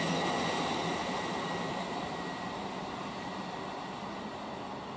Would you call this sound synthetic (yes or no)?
no